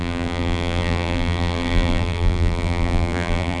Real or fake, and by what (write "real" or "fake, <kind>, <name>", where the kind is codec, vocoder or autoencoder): fake, vocoder, BigVGAN v2